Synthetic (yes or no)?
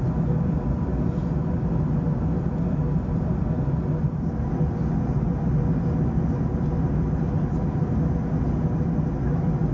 no